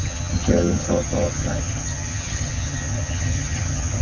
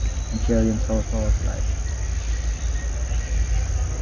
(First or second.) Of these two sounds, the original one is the second